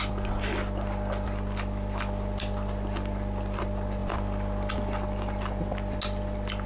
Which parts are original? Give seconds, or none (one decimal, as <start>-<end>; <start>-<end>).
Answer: 0.0-4.0; 4.7-6.7